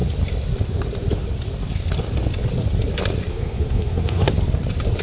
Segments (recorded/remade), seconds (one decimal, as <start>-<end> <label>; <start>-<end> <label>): 0.0-3.3 recorded; 3.3-4.3 remade; 4.3-5.0 recorded